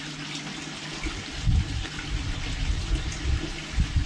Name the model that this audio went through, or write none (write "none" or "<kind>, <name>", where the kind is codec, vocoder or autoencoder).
none